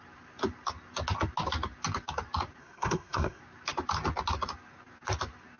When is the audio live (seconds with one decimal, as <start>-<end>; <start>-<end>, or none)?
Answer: 0.0-2.6; 3.4-5.6